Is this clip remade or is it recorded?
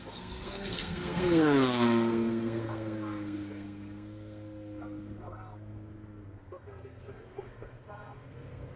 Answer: remade